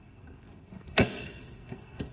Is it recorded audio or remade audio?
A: remade